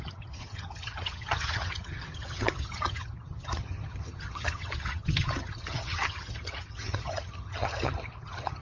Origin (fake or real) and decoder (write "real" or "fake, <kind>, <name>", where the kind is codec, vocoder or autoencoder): fake, vocoder, HiFi-GAN